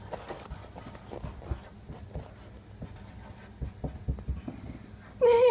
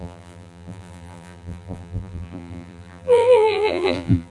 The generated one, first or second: second